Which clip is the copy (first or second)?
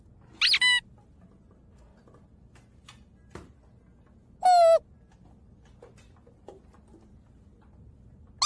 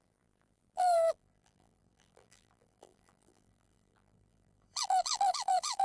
second